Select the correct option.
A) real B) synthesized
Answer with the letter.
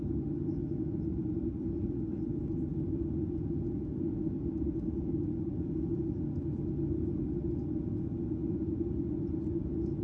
A